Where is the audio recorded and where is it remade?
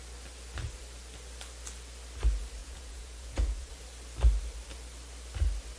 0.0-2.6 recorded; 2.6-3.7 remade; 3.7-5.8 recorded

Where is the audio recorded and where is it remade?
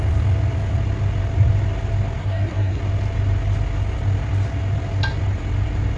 0.0-2.2 recorded; 2.2-2.8 remade; 2.8-6.0 recorded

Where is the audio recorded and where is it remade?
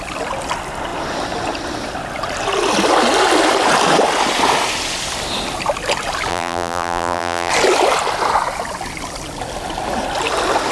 0.0-6.3 recorded; 6.3-7.5 remade; 7.5-10.7 recorded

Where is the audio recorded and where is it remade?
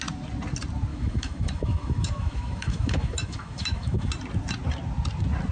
0.0-0.9 recorded; 0.9-4.1 remade; 4.1-5.5 recorded